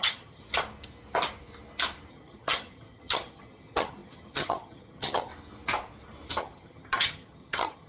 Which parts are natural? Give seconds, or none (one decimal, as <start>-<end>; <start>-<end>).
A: 0.4-2.1; 5.3-6.4